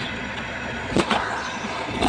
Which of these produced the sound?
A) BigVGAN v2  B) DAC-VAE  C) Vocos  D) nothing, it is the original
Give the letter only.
C